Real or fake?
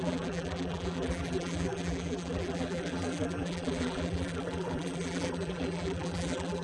fake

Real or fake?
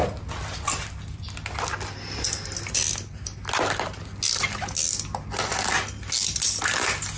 real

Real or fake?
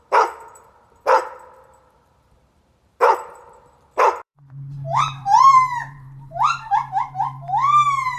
fake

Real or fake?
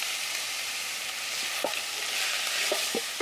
real